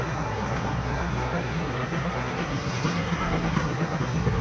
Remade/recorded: remade